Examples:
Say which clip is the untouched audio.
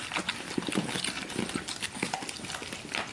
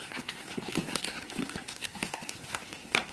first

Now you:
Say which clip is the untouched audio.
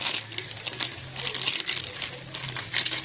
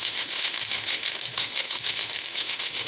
first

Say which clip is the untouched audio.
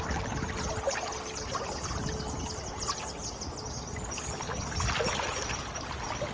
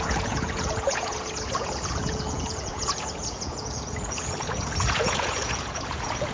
first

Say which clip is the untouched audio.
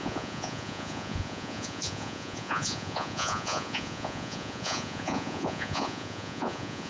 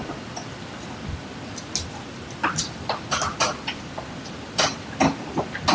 second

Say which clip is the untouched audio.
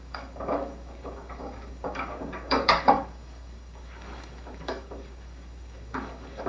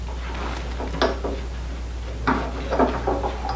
second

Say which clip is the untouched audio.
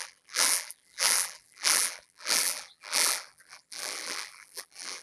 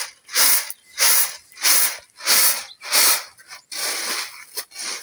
second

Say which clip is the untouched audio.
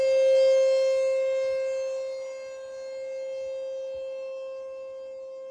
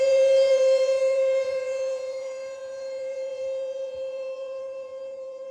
first